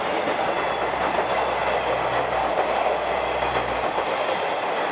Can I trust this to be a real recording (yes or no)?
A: yes